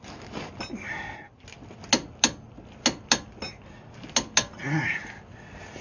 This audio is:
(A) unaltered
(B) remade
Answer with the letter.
A